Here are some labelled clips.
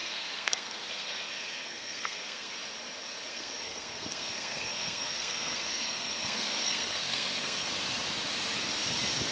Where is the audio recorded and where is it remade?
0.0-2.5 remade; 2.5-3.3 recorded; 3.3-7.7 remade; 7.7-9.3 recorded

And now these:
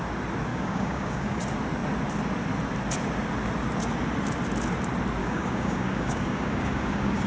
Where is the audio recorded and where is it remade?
0.0-0.5 recorded; 0.5-1.4 remade; 1.4-5.2 recorded; 5.2-7.3 remade

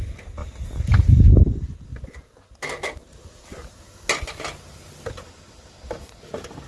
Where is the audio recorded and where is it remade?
0.0-6.7 recorded

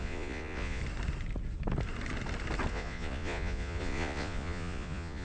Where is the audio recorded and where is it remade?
0.0-0.8 remade; 0.8-2.7 recorded; 2.7-5.2 remade

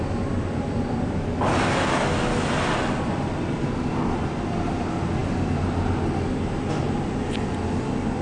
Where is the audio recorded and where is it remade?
0.0-8.2 recorded

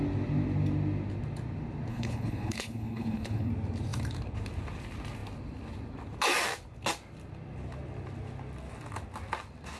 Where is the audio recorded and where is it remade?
0.0-1.9 recorded; 1.9-3.5 remade; 3.5-9.8 recorded

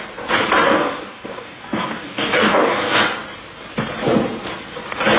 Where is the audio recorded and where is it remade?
0.0-0.7 recorded; 0.7-3.0 remade; 3.0-5.2 recorded

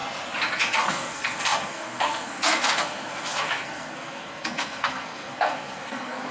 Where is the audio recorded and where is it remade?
0.0-0.5 recorded; 0.5-6.3 remade